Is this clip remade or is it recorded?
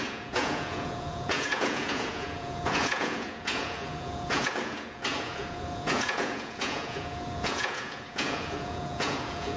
remade